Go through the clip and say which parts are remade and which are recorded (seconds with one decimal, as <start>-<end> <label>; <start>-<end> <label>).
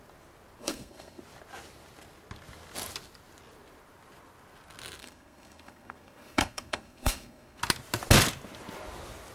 0.0-0.6 recorded; 0.6-1.2 remade; 1.2-5.0 recorded; 5.0-7.6 remade; 7.6-9.3 recorded